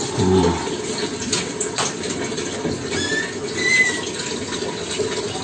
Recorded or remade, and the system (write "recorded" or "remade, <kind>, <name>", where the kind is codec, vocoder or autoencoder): recorded